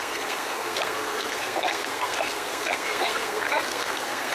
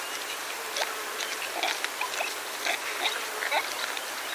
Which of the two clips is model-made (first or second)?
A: first